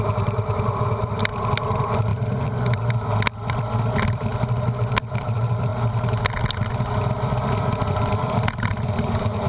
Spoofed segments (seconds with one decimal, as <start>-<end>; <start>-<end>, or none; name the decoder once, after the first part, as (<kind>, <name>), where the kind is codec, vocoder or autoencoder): 0.0-4.3 (vocoder, BigVGAN v2); 4.9-5.7; 7.9-9.5

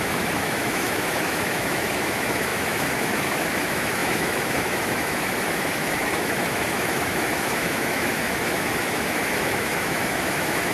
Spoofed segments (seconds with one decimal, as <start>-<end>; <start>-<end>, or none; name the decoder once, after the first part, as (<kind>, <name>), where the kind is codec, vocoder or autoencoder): 0.0-10.7 (autoencoder, DAC-VAE)

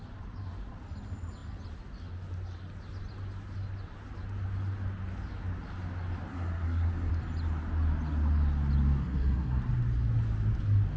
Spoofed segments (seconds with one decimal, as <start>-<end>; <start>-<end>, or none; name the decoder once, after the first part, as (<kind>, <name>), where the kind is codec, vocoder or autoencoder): 6.3-7.1 (codec, SNAC); 9.0-9.6

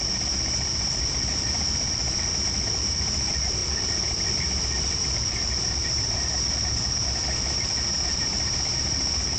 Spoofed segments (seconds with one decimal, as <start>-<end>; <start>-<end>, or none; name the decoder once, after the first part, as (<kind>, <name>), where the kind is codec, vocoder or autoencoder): 3.6-7.9 (vocoder, BigVGAN v2)

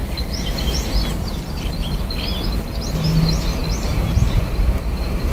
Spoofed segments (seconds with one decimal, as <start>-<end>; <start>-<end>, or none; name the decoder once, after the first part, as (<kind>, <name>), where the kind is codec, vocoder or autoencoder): 0.0-3.2 (vocoder, BigVGAN v2); 3.6-4.4